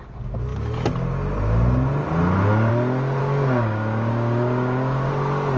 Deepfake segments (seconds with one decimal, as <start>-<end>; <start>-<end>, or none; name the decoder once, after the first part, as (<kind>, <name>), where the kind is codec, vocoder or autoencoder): 3.2-5.1 (codec, DAC)